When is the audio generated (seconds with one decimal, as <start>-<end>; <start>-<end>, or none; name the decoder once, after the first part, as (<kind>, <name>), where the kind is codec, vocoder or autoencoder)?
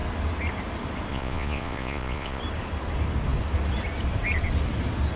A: 1.1-2.4 (vocoder, Vocos)